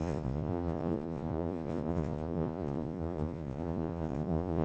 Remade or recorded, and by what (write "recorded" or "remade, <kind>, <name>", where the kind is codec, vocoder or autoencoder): remade, vocoder, Vocos